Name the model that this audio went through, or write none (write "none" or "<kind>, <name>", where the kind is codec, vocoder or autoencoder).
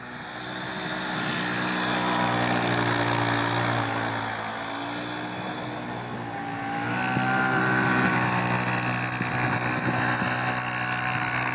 none